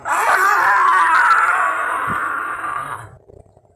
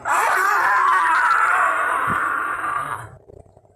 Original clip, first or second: first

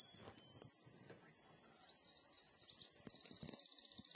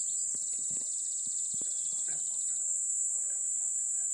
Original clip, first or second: first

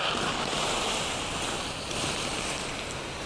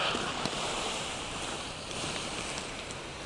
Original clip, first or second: first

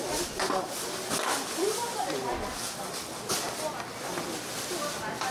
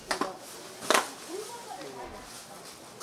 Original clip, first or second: second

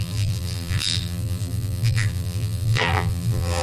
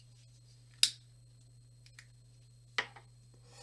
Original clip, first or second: second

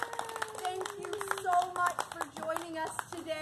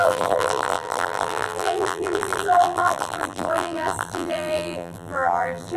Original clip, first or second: first